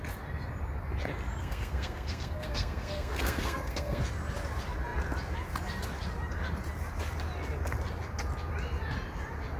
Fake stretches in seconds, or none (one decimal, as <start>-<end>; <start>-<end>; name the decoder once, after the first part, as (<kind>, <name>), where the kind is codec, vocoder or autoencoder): 1.4-4.0 (codec, SNAC)